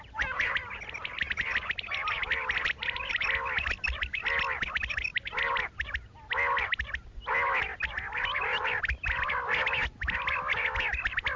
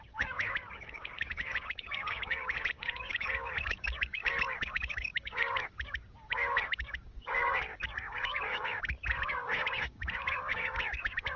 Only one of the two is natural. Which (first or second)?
first